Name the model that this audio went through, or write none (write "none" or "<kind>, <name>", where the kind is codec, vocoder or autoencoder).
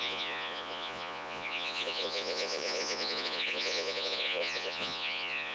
vocoder, Vocos